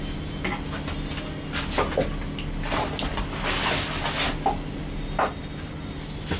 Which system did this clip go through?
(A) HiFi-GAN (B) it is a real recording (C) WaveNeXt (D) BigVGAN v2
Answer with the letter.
B